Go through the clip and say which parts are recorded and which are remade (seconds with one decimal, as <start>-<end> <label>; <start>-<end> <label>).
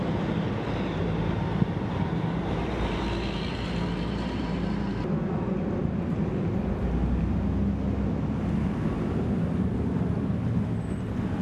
0.0-1.0 recorded; 1.0-5.0 remade; 5.0-11.4 recorded